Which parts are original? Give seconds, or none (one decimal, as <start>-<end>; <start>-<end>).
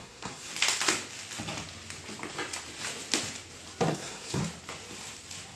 0.5-3.9; 4.4-5.6